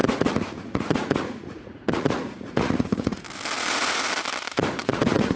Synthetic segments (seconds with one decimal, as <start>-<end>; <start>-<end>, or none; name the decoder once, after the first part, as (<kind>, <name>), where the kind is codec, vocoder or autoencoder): 0.0-3.2 (vocoder, Vocos); 4.8-5.4